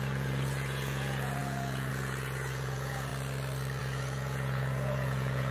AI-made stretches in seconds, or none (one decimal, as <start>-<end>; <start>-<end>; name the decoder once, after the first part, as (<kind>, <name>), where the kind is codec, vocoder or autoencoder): 0.0-3.1 (vocoder, Vocos); 3.8-5.5